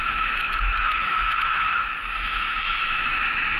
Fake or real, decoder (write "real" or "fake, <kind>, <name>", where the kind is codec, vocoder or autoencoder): fake, autoencoder, DAC-VAE